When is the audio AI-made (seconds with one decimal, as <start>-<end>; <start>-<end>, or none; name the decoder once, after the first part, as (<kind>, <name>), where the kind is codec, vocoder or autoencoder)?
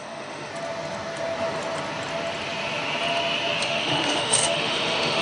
0.0-0.5 (autoencoder, DAC-VAE); 3.6-5.2